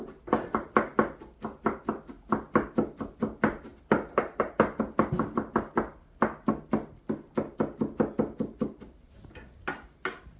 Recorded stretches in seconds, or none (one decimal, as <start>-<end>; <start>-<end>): 0.0-10.4